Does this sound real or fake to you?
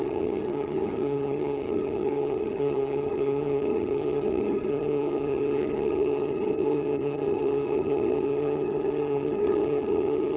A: fake